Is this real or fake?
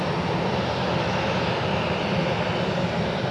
real